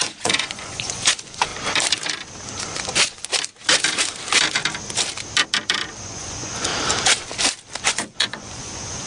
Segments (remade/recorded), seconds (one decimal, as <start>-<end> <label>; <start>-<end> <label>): 0.0-1.5 remade; 1.5-2.6 recorded; 2.6-3.2 remade; 3.2-6.0 recorded; 6.0-6.7 remade; 6.7-7.8 recorded; 7.8-9.1 remade